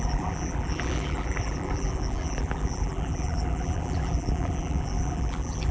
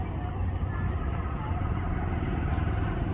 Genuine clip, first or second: second